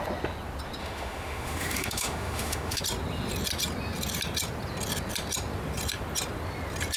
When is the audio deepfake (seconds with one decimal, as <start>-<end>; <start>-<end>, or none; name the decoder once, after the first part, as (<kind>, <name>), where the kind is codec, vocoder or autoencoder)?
0.8-2.8 (autoencoder, DAC-VAE)